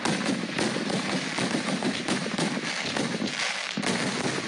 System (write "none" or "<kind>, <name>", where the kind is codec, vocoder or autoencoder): none